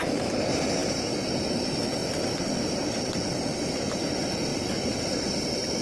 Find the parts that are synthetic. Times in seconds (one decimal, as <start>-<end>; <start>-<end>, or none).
0.0-5.8